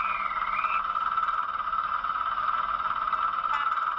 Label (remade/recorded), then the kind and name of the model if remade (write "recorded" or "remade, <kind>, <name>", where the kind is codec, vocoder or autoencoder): recorded